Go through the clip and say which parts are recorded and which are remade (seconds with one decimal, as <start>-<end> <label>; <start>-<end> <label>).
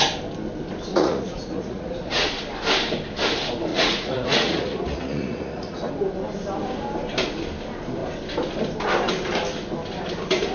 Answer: 0.0-0.9 recorded; 0.9-2.3 remade; 2.3-3.7 recorded; 3.7-5.9 remade; 5.9-10.5 recorded